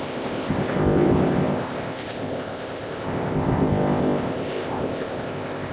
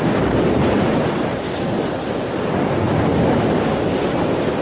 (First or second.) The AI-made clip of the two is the first